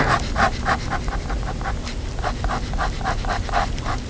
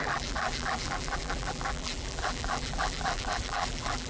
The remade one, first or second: second